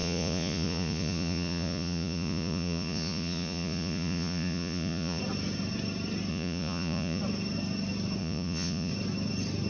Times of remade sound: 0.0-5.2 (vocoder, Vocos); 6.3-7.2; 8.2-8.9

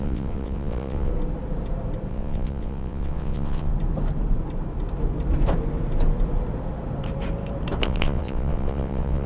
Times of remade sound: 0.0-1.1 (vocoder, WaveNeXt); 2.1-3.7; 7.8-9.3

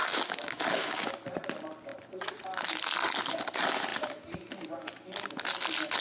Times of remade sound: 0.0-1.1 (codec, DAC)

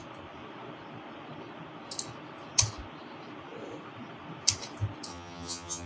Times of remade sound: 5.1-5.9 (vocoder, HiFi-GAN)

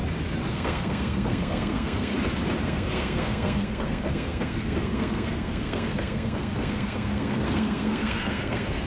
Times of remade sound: 0.5-2.1 (codec, SNAC); 2.6-8.9